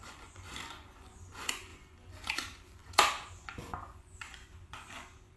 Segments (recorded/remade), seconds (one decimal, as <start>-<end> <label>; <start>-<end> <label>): 0.0-5.4 remade